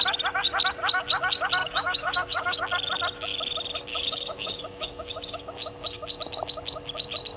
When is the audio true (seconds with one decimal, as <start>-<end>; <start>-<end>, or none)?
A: 0.0-1.6; 2.6-3.9; 5.4-7.4